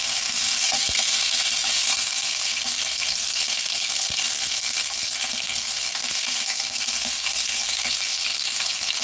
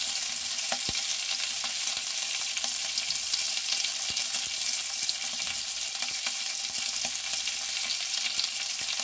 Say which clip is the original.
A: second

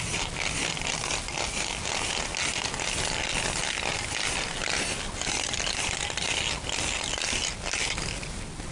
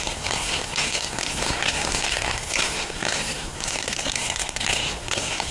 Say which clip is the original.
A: first